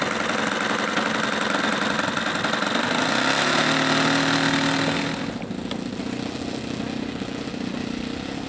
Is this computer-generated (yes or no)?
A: no